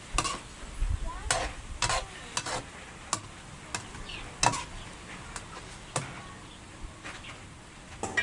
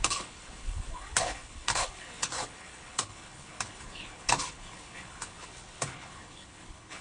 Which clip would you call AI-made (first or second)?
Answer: second